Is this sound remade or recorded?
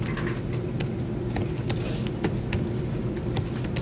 recorded